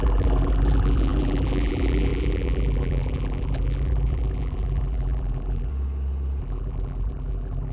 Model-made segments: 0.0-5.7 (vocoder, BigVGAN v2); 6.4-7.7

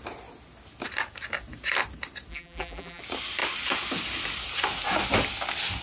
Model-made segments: 2.3-3.0 (vocoder, BigVGAN v2)